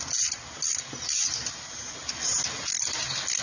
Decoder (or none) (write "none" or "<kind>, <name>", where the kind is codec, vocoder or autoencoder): none